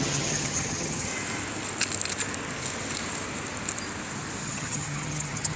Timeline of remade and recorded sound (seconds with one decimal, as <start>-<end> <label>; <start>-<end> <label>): 0.0-1.1 remade; 1.1-4.4 recorded; 4.4-5.6 remade